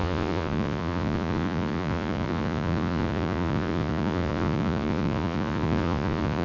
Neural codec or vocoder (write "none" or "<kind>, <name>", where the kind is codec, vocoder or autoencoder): vocoder, Vocos